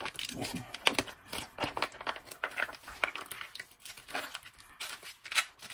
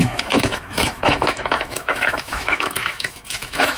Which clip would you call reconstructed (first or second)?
second